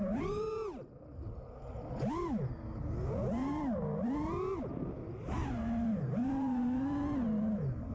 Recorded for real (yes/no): yes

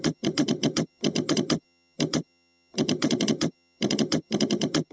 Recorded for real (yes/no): no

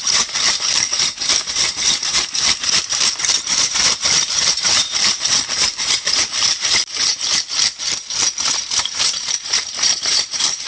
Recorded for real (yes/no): no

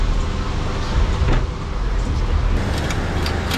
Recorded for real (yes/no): yes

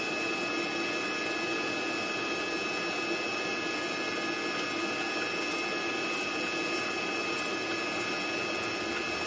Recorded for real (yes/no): yes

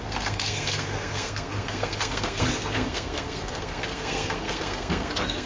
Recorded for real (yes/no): no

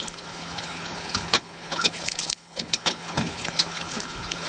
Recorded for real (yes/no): no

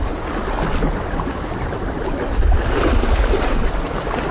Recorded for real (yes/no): yes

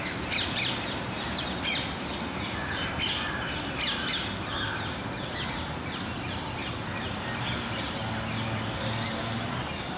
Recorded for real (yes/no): yes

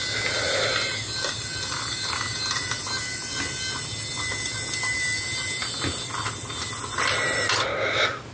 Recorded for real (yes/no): yes